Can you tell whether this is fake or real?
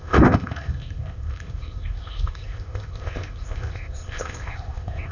fake